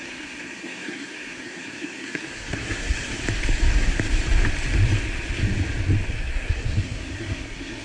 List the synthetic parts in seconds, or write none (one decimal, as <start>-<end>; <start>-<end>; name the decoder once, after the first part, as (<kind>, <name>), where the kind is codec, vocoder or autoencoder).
0.0-3.2 (codec, SNAC); 6.1-7.8